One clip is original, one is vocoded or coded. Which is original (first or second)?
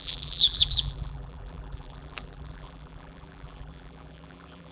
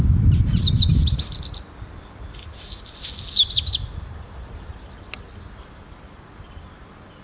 second